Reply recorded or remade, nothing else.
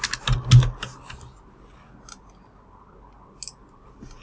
recorded